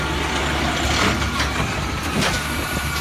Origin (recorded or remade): recorded